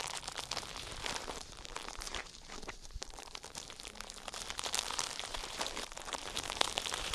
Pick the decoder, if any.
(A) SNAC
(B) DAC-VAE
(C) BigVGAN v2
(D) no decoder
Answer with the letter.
C